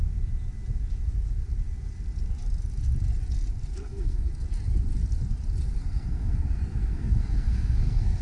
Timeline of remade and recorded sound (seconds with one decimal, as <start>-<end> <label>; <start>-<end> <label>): 0.0-3.7 recorded; 3.7-4.3 remade; 4.3-5.8 recorded; 5.8-8.2 remade

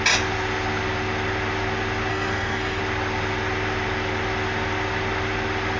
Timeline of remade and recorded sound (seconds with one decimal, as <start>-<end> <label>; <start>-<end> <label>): 0.0-2.1 recorded; 2.1-2.8 remade; 2.8-5.8 recorded

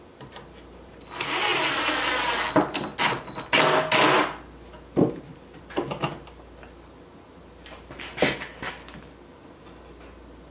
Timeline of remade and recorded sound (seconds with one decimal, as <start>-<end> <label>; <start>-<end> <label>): 0.0-10.5 recorded

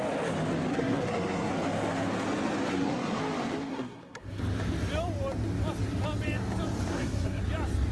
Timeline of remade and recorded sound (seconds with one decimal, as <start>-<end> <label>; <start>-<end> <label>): 0.0-0.7 recorded; 0.7-1.5 remade; 1.5-2.7 recorded; 2.7-3.2 remade; 3.2-3.7 recorded; 3.7-4.4 remade; 4.4-6.9 recorded; 6.9-7.4 remade; 7.4-7.9 recorded

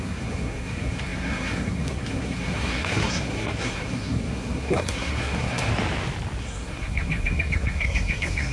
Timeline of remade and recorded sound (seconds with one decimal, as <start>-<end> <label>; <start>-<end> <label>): 0.0-5.7 remade; 5.7-6.4 recorded; 6.4-8.5 remade

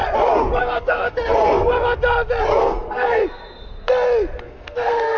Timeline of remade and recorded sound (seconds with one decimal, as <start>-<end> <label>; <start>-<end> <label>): 0.0-0.6 recorded; 0.6-1.7 remade; 1.7-2.6 recorded; 2.6-3.2 remade; 3.2-4.4 recorded; 4.4-5.2 remade